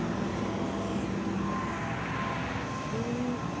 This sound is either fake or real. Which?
real